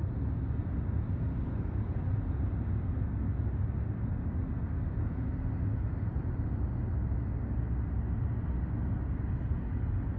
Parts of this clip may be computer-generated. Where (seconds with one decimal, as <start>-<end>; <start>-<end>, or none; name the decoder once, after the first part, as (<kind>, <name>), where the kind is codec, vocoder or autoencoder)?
none